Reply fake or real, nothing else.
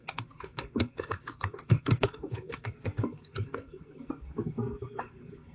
fake